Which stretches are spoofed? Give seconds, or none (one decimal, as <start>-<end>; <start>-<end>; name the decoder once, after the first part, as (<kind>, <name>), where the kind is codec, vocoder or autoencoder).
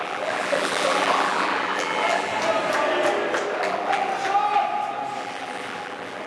0.0-2.3 (vocoder, BigVGAN v2); 3.6-4.1; 5.2-6.3